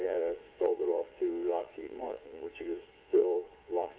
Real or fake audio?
fake